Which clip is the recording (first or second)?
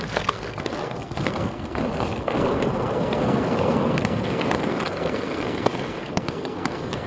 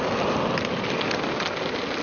second